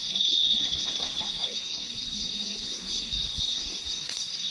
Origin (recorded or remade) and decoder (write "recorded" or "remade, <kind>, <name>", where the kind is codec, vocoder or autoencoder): remade, codec, SNAC